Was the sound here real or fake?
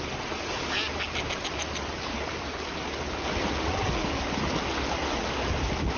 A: real